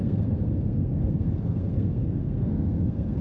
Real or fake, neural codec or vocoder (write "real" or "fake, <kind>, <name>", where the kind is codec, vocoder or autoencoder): fake, codec, SNAC